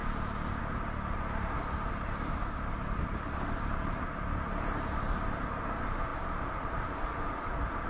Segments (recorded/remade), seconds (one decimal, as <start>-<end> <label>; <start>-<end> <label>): 0.0-0.6 remade; 0.6-6.1 recorded; 6.1-7.9 remade